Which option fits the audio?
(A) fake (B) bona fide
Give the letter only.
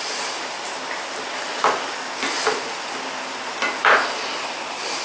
B